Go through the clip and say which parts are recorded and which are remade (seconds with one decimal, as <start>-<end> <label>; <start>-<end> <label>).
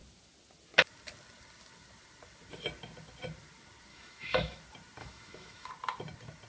0.0-3.9 recorded; 3.9-4.6 remade; 4.6-5.0 recorded; 5.0-5.7 remade; 5.7-6.5 recorded